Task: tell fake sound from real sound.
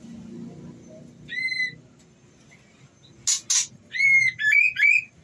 real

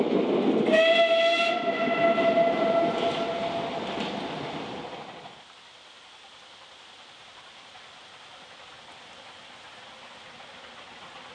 real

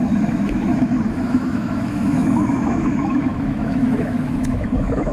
fake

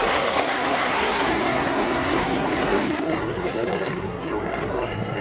fake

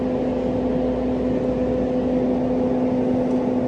real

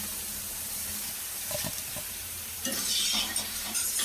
fake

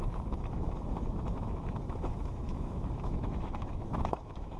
fake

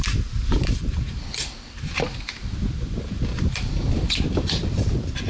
fake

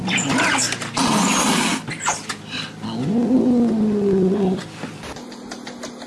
real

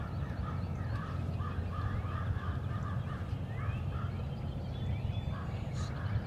real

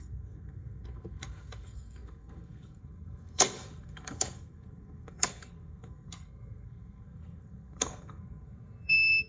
fake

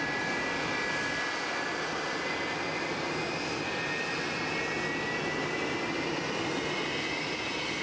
real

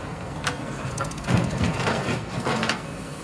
fake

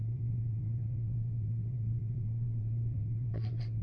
fake